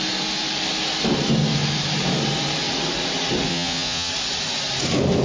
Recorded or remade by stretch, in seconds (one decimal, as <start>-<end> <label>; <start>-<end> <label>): 0.0-3.5 recorded; 3.5-4.1 remade; 4.1-5.2 recorded